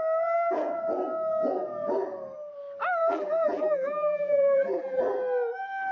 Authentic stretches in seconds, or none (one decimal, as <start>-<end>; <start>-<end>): 0.0-3.0; 5.0-5.9